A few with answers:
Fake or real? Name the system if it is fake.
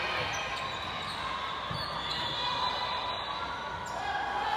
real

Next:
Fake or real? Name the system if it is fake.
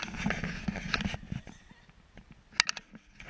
real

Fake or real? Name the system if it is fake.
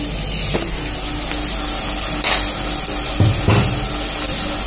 real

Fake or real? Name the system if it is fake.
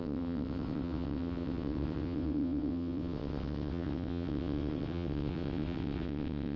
fake, vocoder, WaveNeXt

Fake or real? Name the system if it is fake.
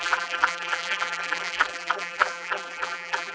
fake, vocoder, BigVGAN v2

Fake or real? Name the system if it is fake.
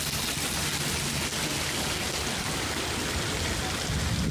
real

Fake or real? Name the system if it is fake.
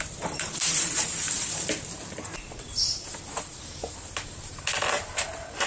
fake, vocoder, BigVGAN v2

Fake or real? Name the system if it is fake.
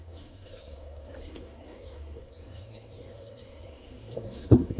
fake, codec, SNAC